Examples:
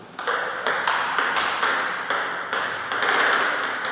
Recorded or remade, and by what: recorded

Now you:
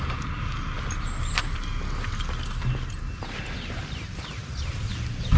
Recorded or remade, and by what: recorded